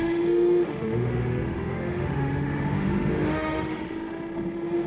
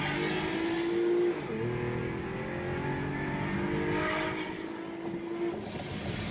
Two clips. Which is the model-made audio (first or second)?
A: first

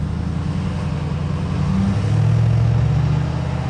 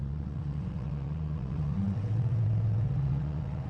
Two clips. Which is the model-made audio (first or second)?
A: second